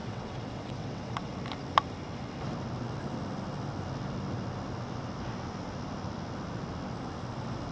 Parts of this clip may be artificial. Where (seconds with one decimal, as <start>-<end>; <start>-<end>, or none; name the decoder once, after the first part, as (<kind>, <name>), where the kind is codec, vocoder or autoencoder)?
0.0-1.3 (vocoder, WaveNeXt)